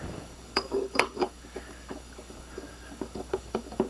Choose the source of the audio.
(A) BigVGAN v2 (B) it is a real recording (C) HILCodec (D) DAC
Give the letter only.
D